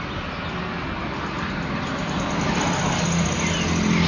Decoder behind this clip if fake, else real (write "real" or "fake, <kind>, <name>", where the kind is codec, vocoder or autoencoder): real